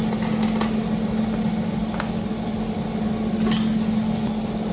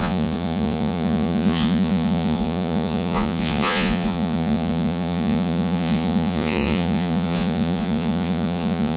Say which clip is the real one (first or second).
first